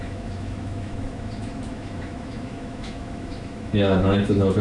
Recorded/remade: remade